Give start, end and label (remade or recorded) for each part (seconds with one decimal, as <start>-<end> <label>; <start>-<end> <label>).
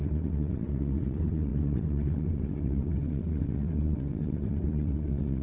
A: 0.0-5.4 remade